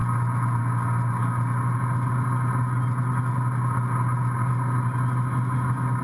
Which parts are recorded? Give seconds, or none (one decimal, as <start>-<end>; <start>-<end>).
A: 0.0-6.0